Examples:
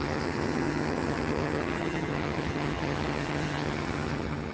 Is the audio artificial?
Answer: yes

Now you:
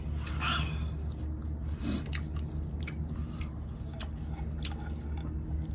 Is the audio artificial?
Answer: no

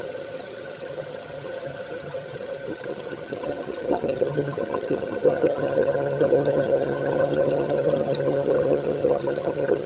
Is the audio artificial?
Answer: yes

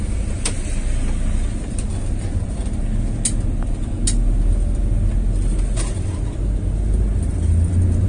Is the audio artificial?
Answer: no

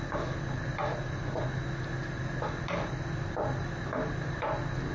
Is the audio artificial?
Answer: no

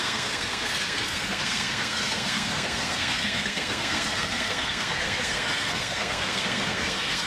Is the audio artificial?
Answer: yes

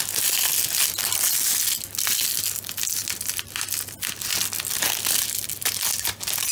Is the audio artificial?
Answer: no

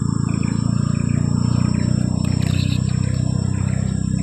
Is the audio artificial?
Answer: no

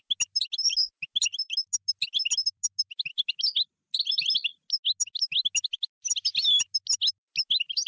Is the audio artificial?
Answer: no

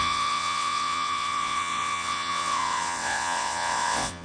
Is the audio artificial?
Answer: yes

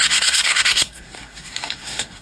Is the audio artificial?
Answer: yes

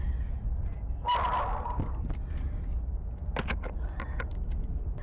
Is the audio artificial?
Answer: no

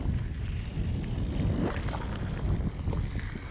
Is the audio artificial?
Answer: no